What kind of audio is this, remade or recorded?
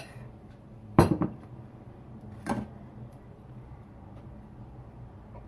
remade